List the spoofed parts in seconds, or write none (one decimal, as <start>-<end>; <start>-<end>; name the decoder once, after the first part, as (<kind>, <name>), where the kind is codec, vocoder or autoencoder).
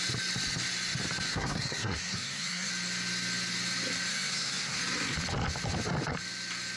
1.3-2.7 (codec, SNAC); 4.1-4.8